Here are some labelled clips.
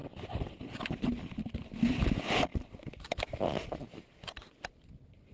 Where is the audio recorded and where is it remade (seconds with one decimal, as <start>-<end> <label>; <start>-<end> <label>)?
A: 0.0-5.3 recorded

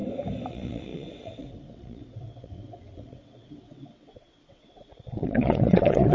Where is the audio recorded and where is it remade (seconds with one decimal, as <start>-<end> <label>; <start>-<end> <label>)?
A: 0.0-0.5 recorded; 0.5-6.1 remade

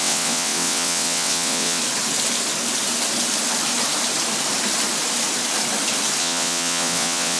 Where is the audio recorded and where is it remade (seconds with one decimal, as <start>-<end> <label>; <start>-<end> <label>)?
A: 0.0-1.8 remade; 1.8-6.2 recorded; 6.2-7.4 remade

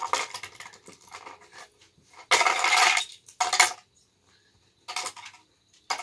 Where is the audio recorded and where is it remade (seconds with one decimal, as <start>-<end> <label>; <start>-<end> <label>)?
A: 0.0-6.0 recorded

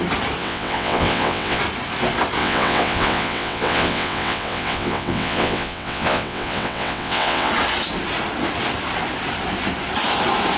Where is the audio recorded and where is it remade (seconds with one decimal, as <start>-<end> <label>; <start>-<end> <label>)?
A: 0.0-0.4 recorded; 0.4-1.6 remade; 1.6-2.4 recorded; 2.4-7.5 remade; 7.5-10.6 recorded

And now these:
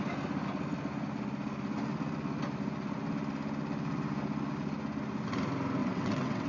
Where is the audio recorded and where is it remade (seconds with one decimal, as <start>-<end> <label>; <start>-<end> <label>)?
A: 0.0-5.8 recorded; 5.8-6.5 remade

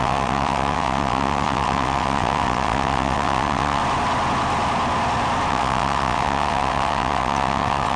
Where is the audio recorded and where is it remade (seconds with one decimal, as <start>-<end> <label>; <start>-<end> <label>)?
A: 0.0-3.8 remade; 3.8-5.5 recorded; 5.5-8.0 remade